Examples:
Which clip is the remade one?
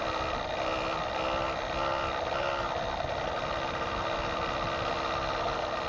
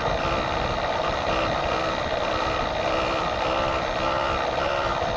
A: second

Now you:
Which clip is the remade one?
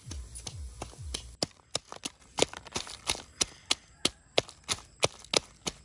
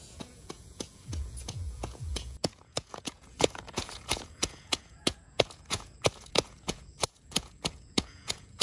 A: second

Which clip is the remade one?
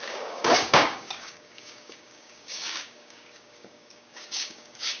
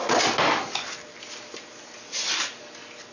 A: first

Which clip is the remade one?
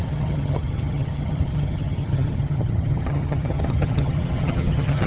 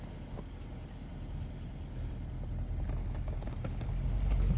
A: first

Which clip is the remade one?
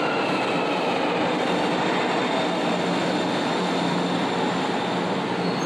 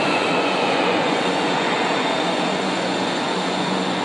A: second